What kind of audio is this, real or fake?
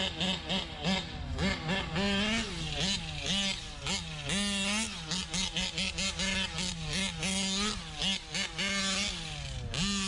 real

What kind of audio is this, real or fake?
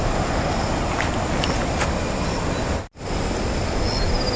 real